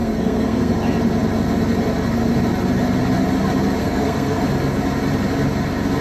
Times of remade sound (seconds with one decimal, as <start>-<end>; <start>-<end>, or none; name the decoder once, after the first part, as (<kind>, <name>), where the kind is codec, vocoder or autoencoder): 0.0-0.7 (codec, SNAC); 3.8-4.4

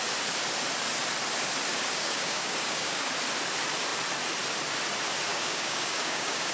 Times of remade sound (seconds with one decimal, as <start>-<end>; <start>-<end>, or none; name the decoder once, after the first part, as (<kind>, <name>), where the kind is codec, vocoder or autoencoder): 1.7-3.1 (codec, DAC); 5.3-6.5

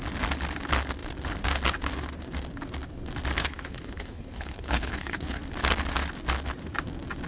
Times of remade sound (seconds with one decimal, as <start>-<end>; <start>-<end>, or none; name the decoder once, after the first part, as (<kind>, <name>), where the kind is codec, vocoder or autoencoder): 3.4-5.4 (codec, HILCodec)

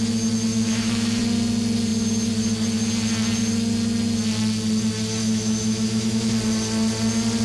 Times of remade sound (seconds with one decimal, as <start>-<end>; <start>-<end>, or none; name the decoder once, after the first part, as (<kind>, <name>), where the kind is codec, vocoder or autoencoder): 0.5-1.2 (autoencoder, DAC-VAE); 5.2-6.3

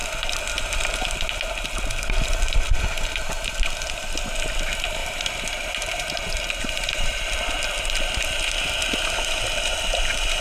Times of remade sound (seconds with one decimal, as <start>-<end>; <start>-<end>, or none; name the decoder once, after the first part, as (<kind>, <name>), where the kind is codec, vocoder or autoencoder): 5.0-7.5 (vocoder, BigVGAN v2)

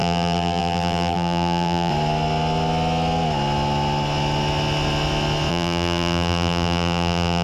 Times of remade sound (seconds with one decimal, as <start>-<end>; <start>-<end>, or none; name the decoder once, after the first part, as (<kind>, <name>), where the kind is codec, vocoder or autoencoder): 0.0-1.9 (vocoder, BigVGAN v2); 5.5-7.4